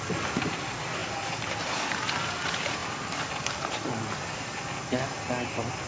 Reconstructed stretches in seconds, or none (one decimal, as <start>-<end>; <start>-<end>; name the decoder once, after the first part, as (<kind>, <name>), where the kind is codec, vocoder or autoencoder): none